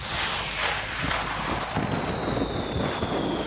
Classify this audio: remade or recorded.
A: recorded